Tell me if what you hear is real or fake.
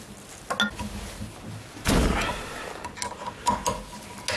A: real